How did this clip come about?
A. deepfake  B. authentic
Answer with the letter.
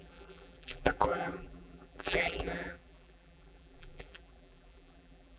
A